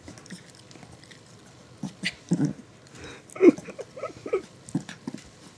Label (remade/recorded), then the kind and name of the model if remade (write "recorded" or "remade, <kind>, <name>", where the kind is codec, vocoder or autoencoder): recorded